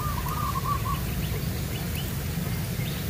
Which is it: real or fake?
real